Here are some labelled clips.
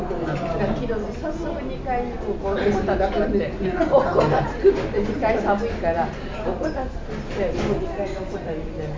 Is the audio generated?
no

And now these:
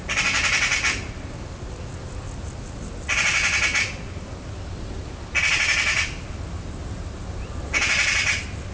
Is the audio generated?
no